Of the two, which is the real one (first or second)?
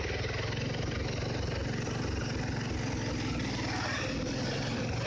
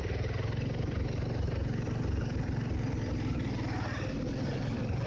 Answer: first